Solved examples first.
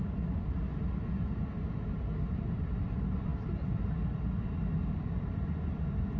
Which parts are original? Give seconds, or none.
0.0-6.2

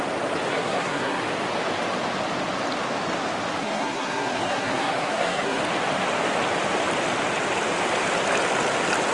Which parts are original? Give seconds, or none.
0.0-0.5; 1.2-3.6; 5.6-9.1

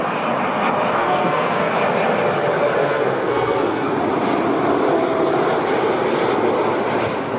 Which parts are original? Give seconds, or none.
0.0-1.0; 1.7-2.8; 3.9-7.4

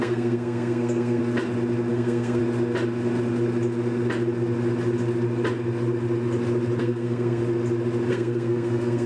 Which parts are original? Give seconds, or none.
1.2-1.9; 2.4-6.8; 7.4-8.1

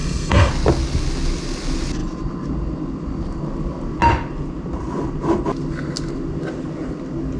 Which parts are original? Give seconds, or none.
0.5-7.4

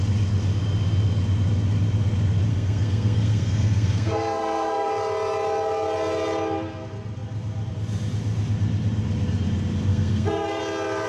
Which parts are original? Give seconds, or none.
0.0-2.5; 4.9-9.9; 10.6-11.1

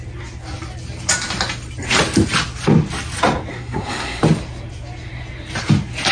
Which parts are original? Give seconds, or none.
0.0-3.5; 4.2-6.1